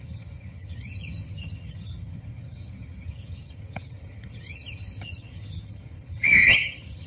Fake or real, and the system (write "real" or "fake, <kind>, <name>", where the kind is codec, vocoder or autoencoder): fake, vocoder, HiFi-GAN